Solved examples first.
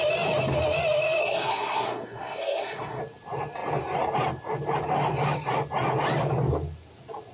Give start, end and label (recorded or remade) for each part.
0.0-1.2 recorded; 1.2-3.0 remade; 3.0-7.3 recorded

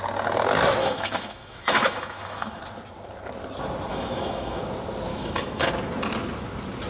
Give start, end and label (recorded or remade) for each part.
0.0-0.8 recorded; 0.8-2.6 remade; 2.6-3.9 recorded; 3.9-4.6 remade; 4.6-5.1 recorded; 5.1-5.7 remade; 5.7-6.9 recorded

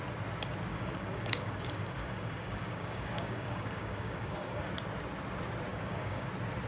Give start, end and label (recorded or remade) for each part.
0.0-0.7 recorded; 0.7-4.7 remade; 4.7-5.7 recorded; 5.7-6.3 remade; 6.3-6.7 recorded

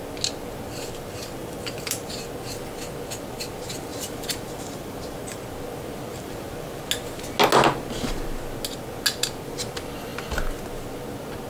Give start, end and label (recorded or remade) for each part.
0.0-1.4 recorded; 1.4-2.1 remade; 2.1-3.9 recorded; 3.9-5.4 remade; 5.4-6.1 recorded; 6.1-6.8 remade; 6.8-11.5 recorded

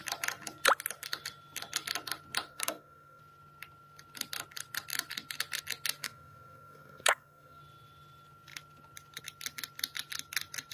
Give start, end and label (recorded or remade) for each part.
0.0-2.5 recorded; 2.5-3.2 remade; 3.2-6.0 recorded; 6.0-7.6 remade; 7.6-10.7 recorded